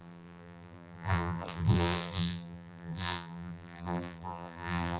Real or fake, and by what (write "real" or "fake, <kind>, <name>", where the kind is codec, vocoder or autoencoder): fake, vocoder, BigVGAN v2